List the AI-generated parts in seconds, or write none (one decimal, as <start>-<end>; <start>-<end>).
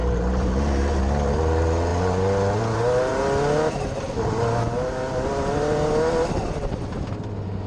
0.0-1.0